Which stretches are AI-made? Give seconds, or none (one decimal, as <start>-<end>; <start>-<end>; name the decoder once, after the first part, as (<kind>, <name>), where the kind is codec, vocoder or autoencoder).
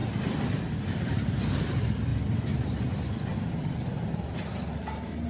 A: 0.6-2.1 (vocoder, BigVGAN v2)